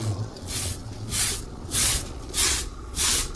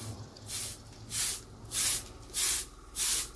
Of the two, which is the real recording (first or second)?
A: second